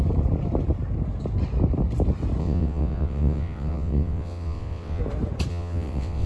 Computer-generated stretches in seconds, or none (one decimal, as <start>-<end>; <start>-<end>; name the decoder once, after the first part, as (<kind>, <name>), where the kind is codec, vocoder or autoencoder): 2.4-5.0 (vocoder, WaveNeXt); 5.5-6.3